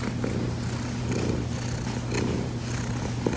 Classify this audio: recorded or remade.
recorded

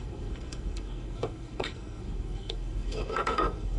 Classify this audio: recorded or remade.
remade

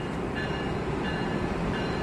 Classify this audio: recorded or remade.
recorded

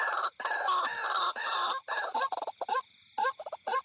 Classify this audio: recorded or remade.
recorded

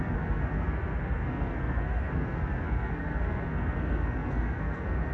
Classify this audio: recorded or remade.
remade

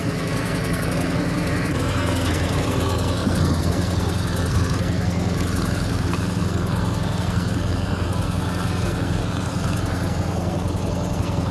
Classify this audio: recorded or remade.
remade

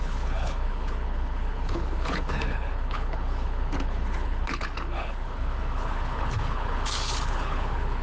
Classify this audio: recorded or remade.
remade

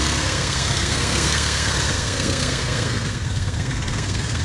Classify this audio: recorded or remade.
remade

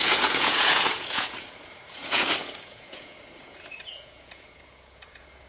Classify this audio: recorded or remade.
remade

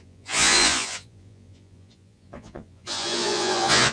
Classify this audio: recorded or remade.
remade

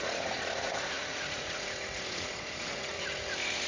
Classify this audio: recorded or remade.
remade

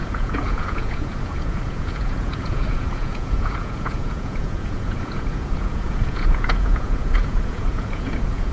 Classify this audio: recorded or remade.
remade